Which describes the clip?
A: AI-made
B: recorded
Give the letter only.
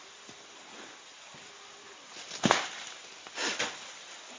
B